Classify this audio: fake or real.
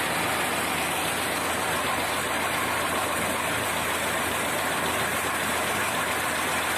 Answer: real